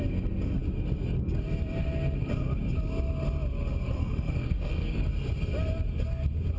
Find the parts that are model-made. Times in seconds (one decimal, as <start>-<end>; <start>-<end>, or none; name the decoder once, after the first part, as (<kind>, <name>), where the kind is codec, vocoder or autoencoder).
4.0-5.0 (codec, SNAC)